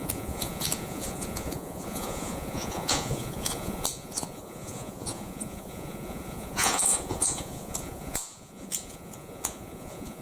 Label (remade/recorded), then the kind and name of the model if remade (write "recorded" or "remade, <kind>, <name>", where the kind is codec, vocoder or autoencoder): remade, vocoder, Vocos